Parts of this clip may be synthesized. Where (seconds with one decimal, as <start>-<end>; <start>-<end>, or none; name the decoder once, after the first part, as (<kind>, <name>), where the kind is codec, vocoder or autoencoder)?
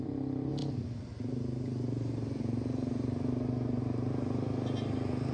none